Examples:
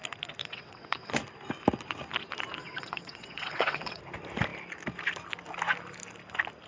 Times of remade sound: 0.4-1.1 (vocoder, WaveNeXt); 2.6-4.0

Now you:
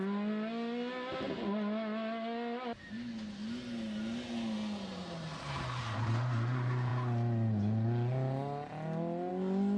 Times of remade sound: none

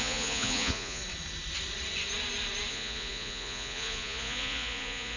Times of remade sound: 0.0-1.0 (vocoder, Vocos); 2.7-5.2

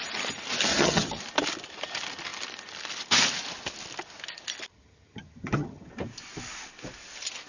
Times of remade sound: 0.7-1.2 (vocoder, HiFi-GAN); 4.7-5.9

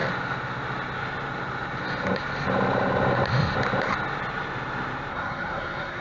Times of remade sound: 5.1-6.0 (codec, SNAC)

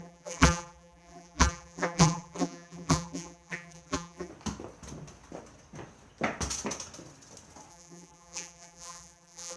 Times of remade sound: 0.0-4.3 (vocoder, BigVGAN v2); 7.7-9.6

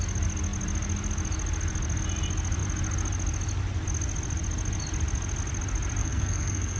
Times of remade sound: 6.0-6.8 (codec, SNAC)